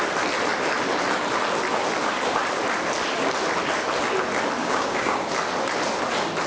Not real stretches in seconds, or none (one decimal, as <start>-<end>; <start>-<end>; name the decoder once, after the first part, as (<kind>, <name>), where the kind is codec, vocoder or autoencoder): 4.6-5.3 (codec, DAC)